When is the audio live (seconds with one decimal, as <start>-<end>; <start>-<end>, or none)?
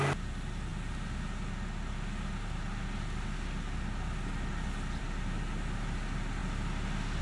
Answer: 0.0-7.2